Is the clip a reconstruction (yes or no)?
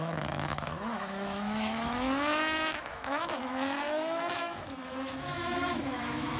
yes